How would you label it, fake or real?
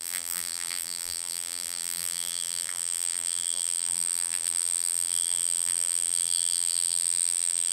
fake